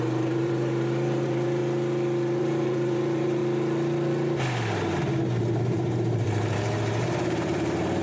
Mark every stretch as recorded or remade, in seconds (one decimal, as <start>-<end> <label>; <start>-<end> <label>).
0.0-1.6 remade; 1.6-2.4 recorded; 2.4-3.4 remade; 3.4-5.6 recorded; 5.6-8.0 remade